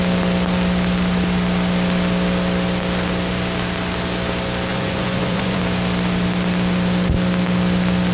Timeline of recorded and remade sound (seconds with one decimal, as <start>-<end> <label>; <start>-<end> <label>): 0.0-4.7 recorded; 4.7-5.6 remade; 5.6-8.1 recorded